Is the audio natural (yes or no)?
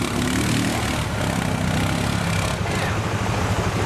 yes